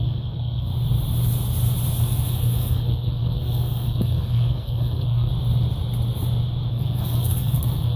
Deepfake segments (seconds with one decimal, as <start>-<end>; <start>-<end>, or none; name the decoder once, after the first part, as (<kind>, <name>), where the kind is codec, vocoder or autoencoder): 0.0-0.7 (codec, SNAC); 2.0-5.3; 6.7-8.0